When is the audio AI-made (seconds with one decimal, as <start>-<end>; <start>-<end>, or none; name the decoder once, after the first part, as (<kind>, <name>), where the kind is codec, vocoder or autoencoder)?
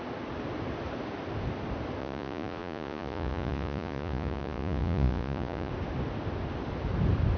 2.0-5.7 (vocoder, Vocos)